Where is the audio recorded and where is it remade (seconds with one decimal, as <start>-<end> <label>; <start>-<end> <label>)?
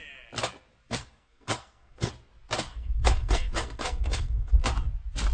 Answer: 0.0-1.0 recorded; 1.0-2.1 remade; 2.1-2.7 recorded; 2.7-4.5 remade; 4.5-5.3 recorded